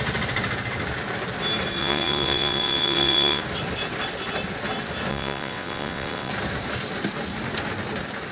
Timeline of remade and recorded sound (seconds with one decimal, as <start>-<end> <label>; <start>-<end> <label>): 0.0-1.8 recorded; 1.8-3.4 remade; 3.4-5.1 recorded; 5.1-6.3 remade; 6.3-8.3 recorded